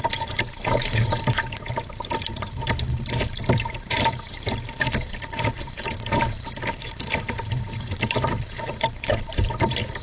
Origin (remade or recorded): remade